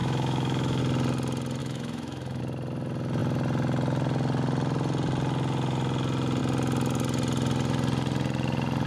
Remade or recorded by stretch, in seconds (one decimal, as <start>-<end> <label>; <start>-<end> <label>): 0.0-0.8 remade; 0.8-1.6 recorded; 1.6-2.4 remade; 2.4-8.9 recorded